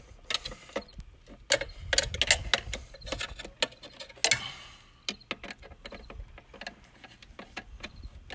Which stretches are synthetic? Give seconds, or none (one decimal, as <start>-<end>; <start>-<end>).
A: none